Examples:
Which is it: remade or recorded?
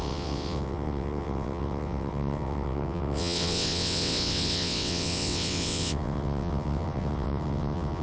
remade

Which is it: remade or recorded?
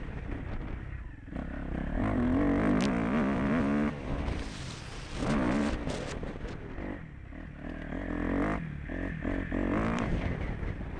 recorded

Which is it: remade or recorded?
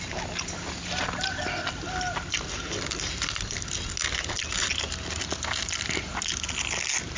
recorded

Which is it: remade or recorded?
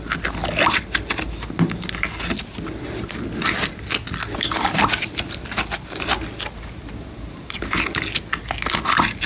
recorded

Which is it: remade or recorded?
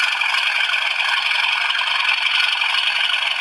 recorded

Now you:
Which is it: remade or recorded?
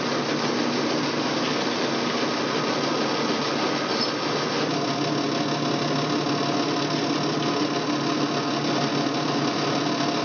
recorded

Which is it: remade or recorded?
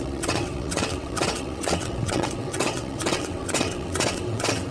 remade